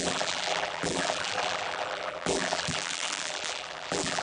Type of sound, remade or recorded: remade